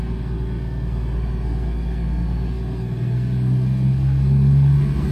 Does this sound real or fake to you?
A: fake